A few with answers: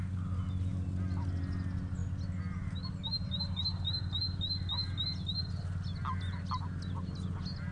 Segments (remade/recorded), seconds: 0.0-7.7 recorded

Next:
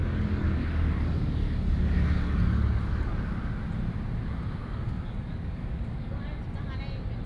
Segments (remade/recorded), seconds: 0.0-3.5 remade; 3.5-4.6 recorded; 4.6-6.2 remade; 6.2-7.3 recorded

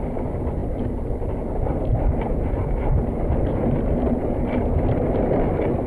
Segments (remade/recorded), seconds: 0.0-4.2 recorded; 4.2-5.2 remade; 5.2-5.9 recorded